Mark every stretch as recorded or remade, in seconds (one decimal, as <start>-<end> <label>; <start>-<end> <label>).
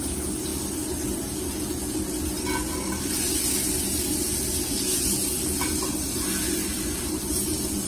0.0-7.9 recorded